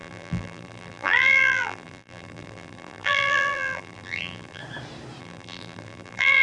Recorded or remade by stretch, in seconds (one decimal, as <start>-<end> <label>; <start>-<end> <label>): 0.0-4.6 remade; 4.6-5.2 recorded; 5.2-6.4 remade